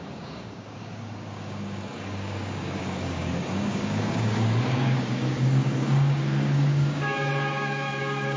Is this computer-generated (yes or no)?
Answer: yes